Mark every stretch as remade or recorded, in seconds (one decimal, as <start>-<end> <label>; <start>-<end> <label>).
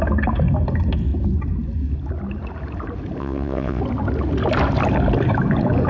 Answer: 0.0-3.2 recorded; 3.2-3.8 remade; 3.8-5.9 recorded